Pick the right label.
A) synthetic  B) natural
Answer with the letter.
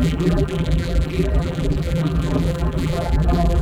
A